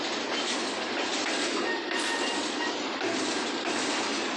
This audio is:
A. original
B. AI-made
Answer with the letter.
A